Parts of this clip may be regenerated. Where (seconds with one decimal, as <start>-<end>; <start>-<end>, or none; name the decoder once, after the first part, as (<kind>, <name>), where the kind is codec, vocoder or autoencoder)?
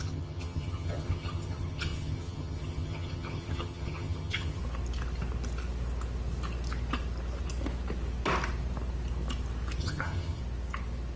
0.0-4.6 (vocoder, HiFi-GAN); 9.8-10.4